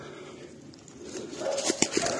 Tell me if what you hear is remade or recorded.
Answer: recorded